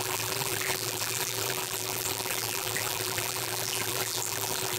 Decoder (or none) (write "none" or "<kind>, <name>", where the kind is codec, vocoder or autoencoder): vocoder, BigVGAN v2